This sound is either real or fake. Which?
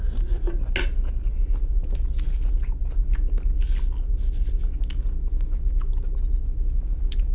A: real